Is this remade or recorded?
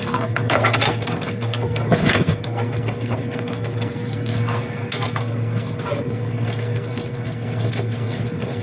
remade